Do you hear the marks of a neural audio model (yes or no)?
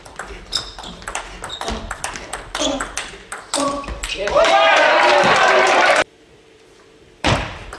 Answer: yes